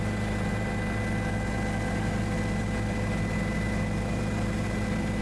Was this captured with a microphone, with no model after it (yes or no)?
yes